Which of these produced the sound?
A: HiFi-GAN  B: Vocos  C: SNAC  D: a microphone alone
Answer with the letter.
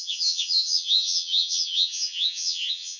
A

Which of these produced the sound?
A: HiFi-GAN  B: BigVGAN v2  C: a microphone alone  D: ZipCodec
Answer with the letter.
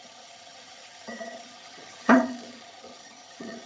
A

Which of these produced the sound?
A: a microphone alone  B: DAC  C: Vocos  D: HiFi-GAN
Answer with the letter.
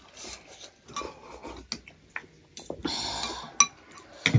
A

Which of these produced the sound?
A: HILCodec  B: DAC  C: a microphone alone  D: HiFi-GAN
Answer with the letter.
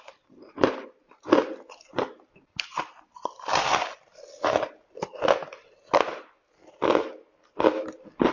C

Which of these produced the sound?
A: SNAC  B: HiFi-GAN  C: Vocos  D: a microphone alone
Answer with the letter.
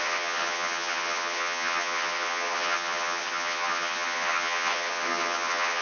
B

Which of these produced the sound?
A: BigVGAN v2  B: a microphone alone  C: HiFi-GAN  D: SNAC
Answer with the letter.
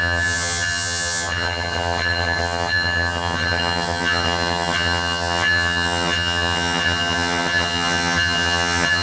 C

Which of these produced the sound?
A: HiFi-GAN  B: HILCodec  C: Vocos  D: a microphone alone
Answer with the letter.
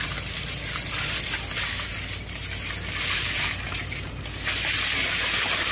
D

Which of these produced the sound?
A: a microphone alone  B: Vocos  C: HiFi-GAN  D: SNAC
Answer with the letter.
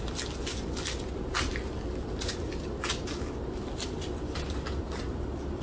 A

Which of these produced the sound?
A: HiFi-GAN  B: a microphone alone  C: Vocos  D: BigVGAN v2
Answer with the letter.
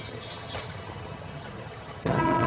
A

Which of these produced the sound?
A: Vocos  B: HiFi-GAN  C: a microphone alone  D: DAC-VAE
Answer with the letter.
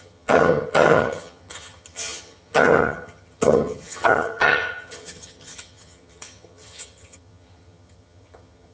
B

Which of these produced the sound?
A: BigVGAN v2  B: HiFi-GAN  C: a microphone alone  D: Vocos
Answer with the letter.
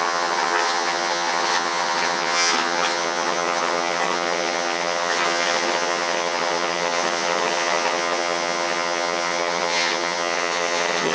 B